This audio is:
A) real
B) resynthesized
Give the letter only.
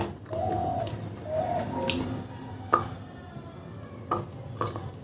A